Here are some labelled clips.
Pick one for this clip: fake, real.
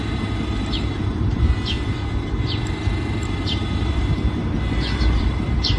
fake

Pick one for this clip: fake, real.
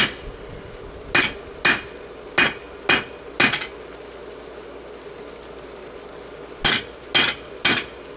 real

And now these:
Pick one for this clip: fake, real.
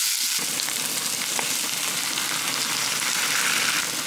real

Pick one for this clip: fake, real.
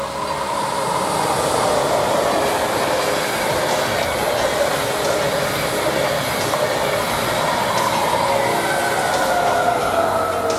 real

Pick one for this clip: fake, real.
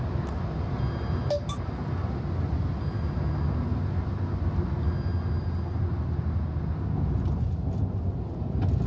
real